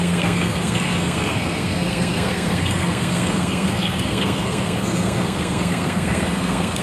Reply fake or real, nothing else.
fake